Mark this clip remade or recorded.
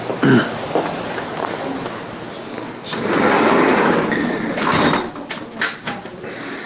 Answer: recorded